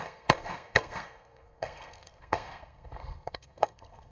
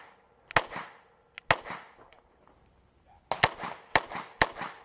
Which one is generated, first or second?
first